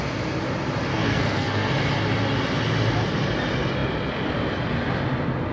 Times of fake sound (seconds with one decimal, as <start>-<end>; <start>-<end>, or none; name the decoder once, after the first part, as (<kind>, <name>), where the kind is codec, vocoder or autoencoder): 0.9-1.7 (codec, SNAC)

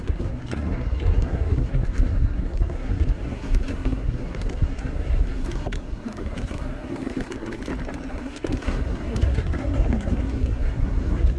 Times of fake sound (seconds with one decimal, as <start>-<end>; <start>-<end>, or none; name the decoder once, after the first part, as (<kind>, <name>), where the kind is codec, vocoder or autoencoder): 0.0-7.6 (codec, SNAC); 8.1-11.4

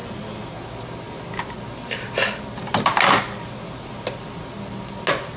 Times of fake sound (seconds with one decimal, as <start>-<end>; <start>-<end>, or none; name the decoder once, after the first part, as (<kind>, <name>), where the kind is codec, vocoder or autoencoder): none

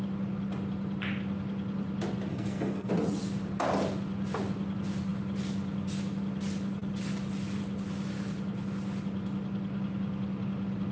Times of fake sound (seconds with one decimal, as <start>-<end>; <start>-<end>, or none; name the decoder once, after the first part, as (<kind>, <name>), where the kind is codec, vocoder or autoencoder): 2.3-2.9 (codec, SNAC)

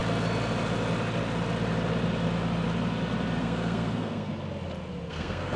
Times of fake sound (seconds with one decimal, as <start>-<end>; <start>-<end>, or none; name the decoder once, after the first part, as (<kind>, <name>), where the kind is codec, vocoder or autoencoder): 3.4-4.3 (codec, SNAC); 5.1-5.6

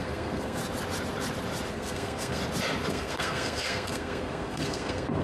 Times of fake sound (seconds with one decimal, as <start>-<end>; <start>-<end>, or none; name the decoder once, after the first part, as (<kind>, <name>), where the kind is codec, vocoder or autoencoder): 0.0-0.6 (codec, SNAC); 1.7-2.4; 2.9-5.2

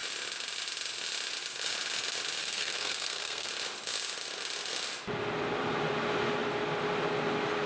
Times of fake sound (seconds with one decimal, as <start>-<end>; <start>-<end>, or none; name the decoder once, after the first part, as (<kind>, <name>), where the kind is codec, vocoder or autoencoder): 2.4-3.5 (codec, SNAC)

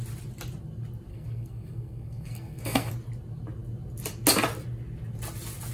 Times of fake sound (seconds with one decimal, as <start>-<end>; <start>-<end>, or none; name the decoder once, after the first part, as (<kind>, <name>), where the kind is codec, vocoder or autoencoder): 1.1-2.9 (codec, SNAC)